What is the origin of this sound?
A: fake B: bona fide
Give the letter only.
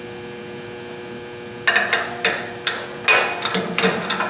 B